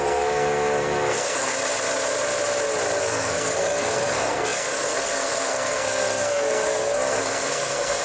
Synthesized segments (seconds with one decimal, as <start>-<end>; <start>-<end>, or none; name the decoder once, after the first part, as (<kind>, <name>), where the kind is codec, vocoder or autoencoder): 0.0-1.5 (codec, SNAC); 3.0-8.0